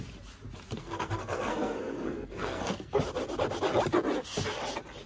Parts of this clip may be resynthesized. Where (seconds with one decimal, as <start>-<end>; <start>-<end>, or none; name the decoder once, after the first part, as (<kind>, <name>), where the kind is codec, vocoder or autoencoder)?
0.8-3.0 (codec, SNAC)